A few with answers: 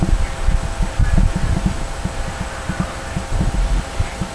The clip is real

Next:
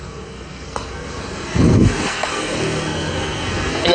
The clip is fake